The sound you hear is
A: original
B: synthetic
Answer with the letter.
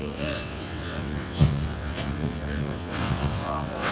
B